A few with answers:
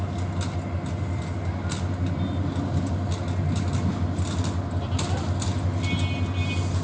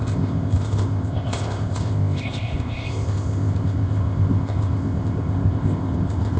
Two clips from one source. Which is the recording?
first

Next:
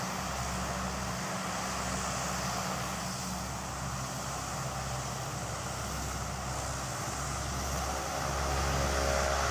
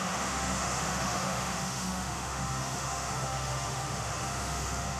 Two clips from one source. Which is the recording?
first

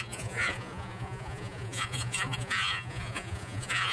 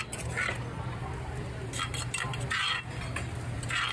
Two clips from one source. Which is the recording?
second